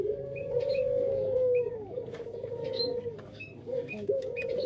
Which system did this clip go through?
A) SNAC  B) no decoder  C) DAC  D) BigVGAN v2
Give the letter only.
C